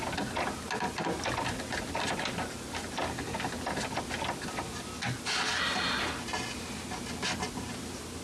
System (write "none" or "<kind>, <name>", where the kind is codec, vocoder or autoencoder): none